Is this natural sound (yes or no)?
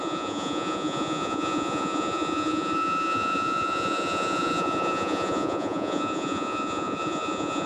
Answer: no